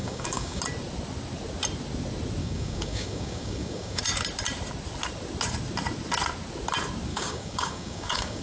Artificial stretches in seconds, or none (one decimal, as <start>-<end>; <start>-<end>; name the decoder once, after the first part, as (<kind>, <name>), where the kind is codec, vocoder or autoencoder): 0.0-0.6 (codec, DAC); 2.4-4.0; 7.1-8.4